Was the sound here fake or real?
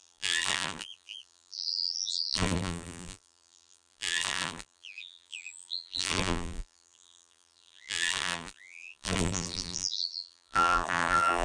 fake